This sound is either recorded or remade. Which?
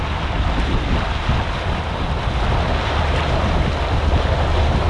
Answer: recorded